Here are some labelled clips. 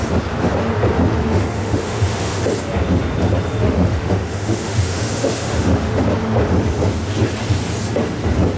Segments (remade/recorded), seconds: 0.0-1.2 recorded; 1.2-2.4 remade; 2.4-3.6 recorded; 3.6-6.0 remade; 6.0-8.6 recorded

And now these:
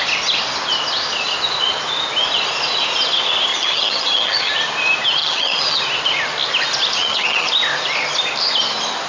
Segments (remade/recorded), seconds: 0.0-3.5 recorded; 3.5-4.5 remade; 4.5-5.2 recorded; 5.2-5.8 remade; 5.8-7.0 recorded; 7.0-7.5 remade; 7.5-9.1 recorded

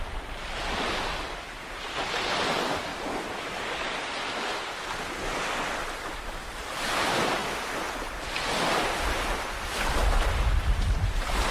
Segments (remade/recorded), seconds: 0.0-11.5 recorded